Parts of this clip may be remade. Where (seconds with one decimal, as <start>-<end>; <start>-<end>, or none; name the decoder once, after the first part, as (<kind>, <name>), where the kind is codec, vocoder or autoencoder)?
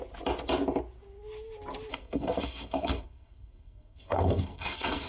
1.9-5.1 (codec, SNAC)